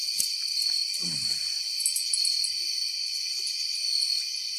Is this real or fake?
real